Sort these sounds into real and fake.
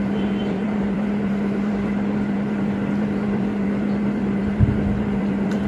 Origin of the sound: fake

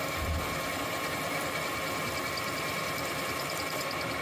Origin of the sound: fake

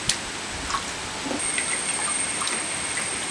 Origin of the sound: real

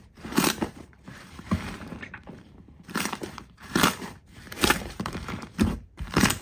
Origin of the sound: fake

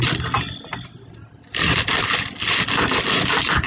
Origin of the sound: real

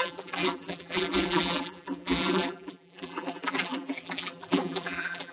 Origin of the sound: fake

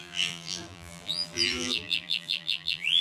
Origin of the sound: fake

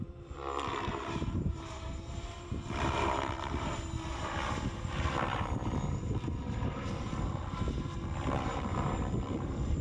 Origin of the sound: fake